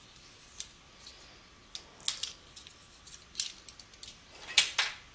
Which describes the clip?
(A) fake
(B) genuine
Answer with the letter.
B